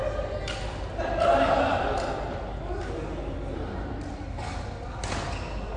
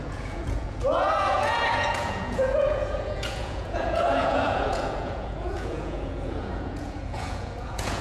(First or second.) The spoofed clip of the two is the second